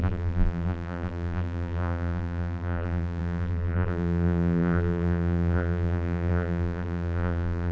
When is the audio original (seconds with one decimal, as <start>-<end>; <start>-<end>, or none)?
none